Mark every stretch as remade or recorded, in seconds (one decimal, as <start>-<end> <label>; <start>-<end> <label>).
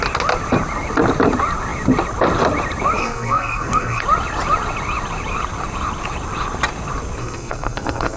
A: 0.0-3.0 recorded; 3.0-4.0 remade; 4.0-7.2 recorded; 7.2-8.2 remade